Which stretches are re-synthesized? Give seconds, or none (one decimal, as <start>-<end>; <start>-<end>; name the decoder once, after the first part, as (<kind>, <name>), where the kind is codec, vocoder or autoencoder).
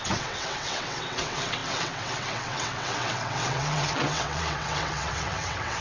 0.0-5.8 (vocoder, WaveNeXt)